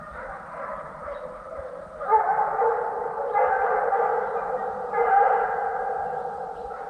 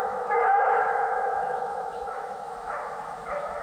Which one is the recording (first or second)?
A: first